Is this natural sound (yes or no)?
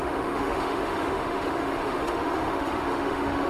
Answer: no